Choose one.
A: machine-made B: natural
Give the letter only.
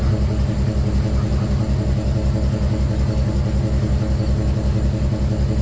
B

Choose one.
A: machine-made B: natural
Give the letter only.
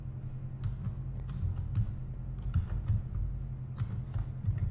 B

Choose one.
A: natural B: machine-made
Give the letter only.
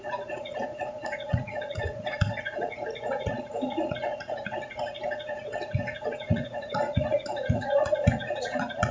B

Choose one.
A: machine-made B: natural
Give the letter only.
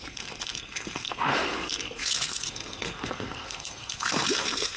A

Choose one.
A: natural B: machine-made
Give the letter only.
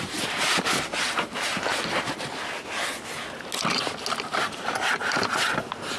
A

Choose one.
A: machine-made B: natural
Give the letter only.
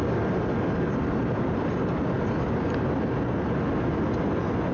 B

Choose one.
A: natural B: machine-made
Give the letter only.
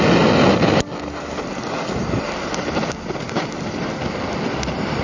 A